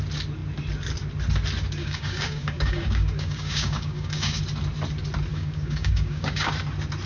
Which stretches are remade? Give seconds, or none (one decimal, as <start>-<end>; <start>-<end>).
1.8-4.4; 5.3-6.5